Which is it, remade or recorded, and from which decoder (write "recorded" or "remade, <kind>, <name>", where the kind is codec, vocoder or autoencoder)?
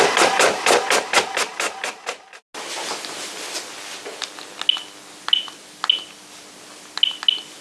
recorded